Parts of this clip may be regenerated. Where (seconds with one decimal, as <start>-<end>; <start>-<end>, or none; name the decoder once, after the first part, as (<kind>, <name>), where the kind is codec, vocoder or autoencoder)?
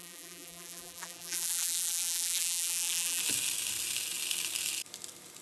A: 0.0-3.2 (vocoder, BigVGAN v2)